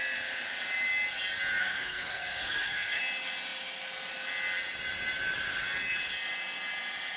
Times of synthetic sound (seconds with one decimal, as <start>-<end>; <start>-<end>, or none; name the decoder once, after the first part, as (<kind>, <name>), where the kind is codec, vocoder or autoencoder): 1.6-3.0 (codec, SNAC)